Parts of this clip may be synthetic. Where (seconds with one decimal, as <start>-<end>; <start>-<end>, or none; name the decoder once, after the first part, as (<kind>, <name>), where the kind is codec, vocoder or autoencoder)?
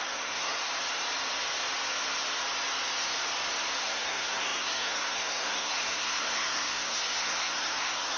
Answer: 0.0-0.7 (codec, SNAC); 3.8-8.2